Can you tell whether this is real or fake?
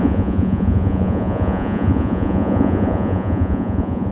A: fake